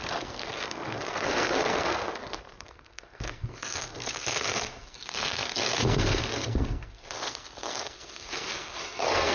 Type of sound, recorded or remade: remade